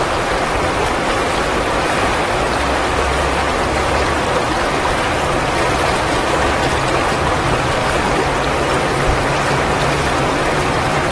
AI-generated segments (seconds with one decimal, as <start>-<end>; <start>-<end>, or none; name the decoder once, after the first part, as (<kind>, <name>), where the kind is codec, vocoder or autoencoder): 0.0-2.0 (vocoder, BigVGAN v2); 7.0-7.8; 9.6-11.1